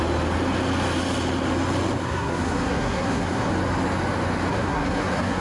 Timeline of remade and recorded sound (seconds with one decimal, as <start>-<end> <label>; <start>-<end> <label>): 0.0-2.0 recorded; 2.0-3.5 remade; 3.5-4.5 recorded; 4.5-5.4 remade